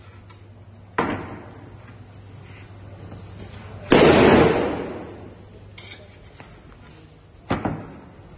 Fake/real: real